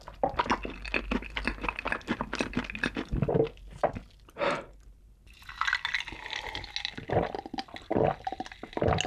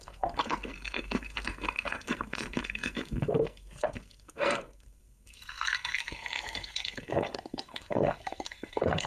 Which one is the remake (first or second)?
second